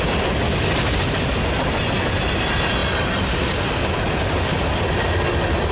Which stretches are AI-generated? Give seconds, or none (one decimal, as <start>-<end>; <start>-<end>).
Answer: none